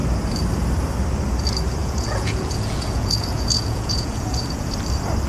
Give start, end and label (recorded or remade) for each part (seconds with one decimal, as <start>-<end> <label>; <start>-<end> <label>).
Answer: 0.0-1.8 recorded; 1.8-4.7 remade; 4.7-5.3 recorded